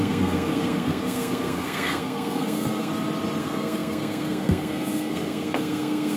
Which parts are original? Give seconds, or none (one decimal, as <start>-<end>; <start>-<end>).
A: 2.9-3.4